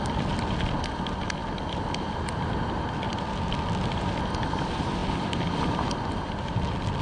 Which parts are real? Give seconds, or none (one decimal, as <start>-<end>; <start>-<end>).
0.0-7.0